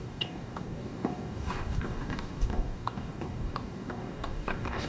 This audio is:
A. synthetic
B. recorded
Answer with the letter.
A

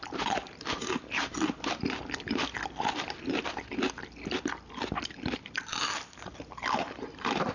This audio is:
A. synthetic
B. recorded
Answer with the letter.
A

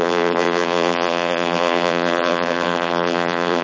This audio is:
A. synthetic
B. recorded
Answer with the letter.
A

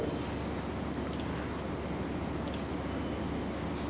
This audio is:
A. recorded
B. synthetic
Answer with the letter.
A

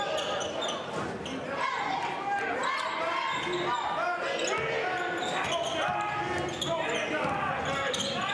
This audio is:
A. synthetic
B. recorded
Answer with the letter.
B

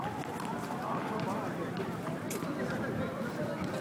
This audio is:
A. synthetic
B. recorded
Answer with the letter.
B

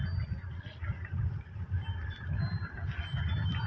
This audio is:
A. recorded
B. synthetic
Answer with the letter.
A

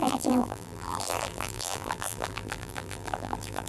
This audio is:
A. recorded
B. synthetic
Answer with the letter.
B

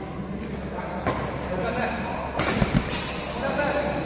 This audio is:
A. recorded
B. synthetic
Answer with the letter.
A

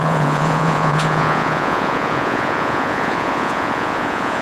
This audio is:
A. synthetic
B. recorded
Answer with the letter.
A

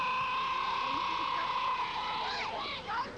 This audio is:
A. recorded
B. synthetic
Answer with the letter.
A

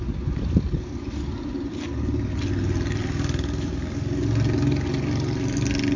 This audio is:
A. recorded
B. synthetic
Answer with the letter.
A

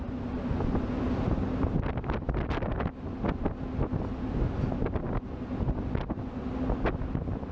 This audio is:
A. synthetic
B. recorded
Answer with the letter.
B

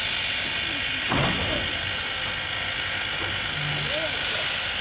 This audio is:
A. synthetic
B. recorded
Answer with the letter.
B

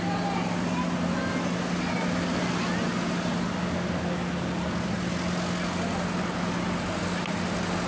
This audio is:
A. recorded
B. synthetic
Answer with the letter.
A